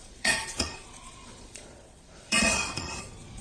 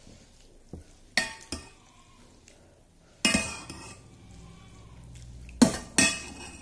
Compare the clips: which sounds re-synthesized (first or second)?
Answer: first